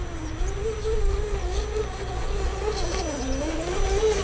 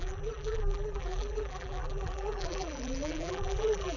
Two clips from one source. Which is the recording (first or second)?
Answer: first